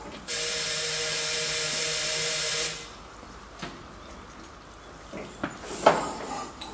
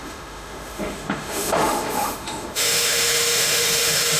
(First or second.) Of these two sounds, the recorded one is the first